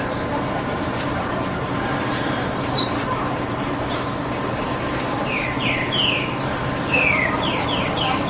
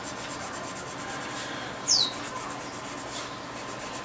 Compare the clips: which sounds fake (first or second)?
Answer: first